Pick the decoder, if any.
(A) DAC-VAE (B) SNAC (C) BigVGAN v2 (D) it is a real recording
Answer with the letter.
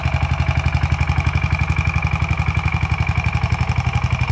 D